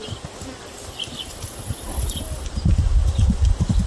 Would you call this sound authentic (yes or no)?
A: yes